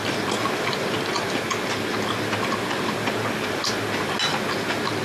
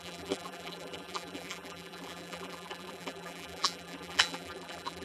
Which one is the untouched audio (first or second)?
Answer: first